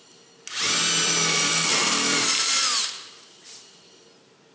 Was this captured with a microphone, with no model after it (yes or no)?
yes